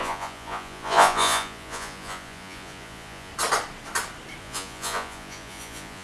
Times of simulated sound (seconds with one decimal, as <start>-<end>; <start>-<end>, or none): 0.0-3.3; 4.4-6.0